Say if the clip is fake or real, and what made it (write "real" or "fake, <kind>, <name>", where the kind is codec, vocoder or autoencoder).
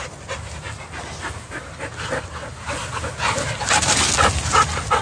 real